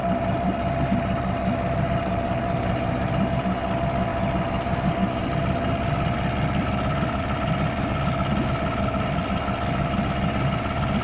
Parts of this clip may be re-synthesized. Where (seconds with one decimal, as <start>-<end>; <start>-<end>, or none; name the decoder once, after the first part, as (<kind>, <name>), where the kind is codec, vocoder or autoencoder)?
none